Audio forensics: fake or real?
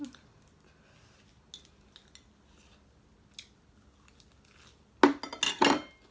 real